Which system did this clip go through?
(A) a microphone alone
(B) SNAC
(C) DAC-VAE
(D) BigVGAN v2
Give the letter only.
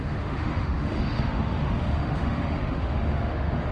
C